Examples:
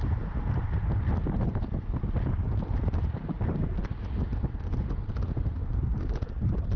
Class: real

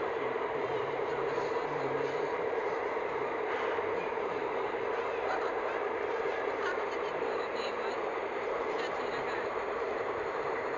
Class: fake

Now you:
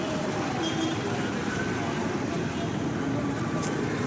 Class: real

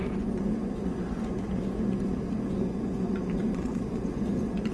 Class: fake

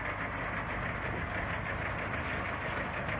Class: real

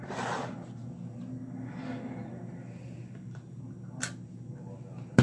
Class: real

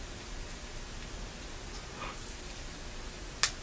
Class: real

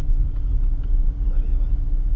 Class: real